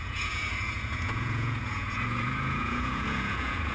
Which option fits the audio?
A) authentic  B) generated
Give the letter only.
B